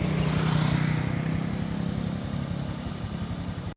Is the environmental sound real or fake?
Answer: real